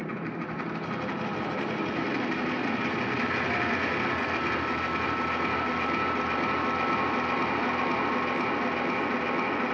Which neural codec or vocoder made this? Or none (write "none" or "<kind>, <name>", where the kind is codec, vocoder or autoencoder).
none